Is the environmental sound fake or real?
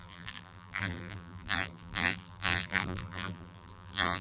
fake